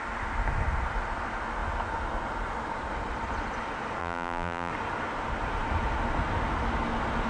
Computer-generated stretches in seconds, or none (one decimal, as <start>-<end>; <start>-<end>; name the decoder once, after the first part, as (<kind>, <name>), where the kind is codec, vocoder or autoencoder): 4.0-4.7 (vocoder, BigVGAN v2)